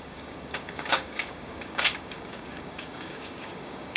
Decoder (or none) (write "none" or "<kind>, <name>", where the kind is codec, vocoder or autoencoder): codec, DAC